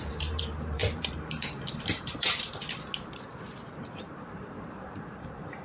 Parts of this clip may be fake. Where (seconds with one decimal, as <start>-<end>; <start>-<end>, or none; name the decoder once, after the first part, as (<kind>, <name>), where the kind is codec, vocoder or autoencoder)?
0.0-2.6 (vocoder, BigVGAN v2); 4.0-5.6